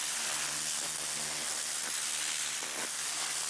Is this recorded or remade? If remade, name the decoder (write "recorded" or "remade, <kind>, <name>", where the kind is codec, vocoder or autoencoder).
recorded